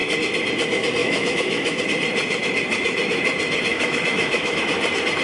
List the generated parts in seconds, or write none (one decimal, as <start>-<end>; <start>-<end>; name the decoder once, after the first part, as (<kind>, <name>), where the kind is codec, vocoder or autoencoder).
1.0-1.8 (autoencoder, DAC-VAE); 3.7-4.6